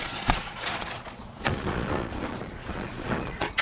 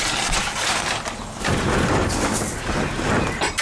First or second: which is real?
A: second